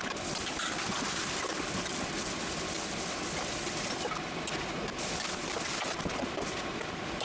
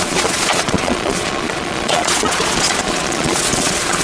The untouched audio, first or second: first